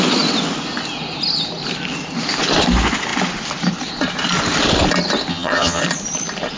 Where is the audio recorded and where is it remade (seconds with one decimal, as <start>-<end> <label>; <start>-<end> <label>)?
0.0-5.3 recorded; 5.3-5.8 remade; 5.8-6.6 recorded